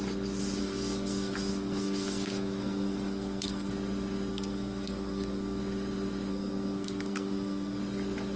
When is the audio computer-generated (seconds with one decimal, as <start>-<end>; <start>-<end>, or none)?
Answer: 0.6-3.7; 4.3-5.6; 6.3-7.8